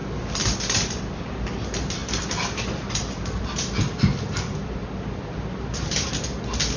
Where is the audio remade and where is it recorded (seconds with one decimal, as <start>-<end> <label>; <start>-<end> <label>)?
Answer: 0.0-2.0 recorded; 2.0-6.1 remade; 6.1-6.8 recorded